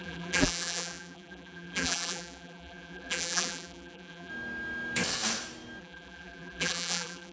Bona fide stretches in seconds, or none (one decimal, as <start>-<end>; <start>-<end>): 4.3-5.8